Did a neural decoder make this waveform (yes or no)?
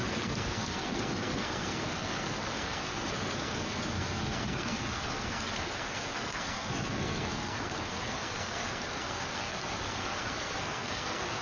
yes